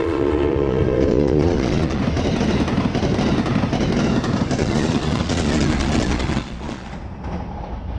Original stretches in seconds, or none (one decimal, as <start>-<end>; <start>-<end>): 2.0-4.6; 6.9-8.0